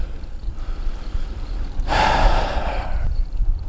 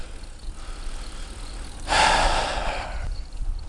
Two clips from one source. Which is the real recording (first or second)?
second